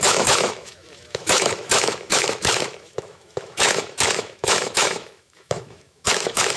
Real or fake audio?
fake